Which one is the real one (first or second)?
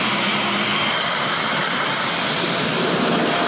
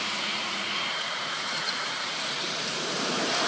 first